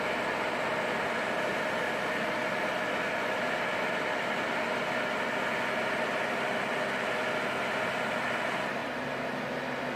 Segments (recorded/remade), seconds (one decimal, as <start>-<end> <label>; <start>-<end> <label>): 0.0-10.0 recorded